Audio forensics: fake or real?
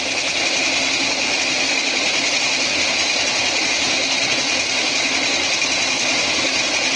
real